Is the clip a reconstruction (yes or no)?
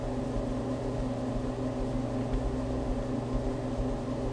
no